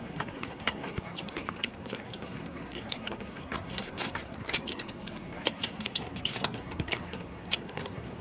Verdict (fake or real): fake